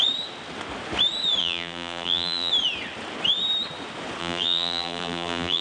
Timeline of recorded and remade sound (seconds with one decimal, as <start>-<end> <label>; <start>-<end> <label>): 0.0-1.4 recorded; 1.4-2.5 remade; 2.5-4.2 recorded; 4.2-5.6 remade